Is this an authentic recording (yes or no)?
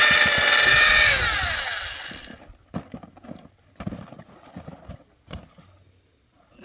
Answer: yes